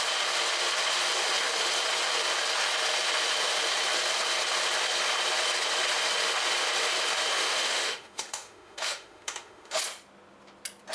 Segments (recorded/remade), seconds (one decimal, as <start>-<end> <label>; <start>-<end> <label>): 0.0-7.3 recorded; 7.3-9.8 remade; 9.8-10.9 recorded